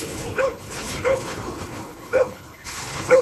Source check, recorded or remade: remade